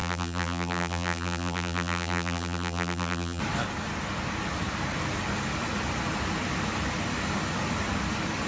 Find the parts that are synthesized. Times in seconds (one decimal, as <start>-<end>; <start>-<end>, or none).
0.0-3.4